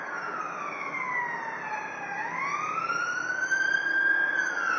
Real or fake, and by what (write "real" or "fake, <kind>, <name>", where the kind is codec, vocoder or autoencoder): real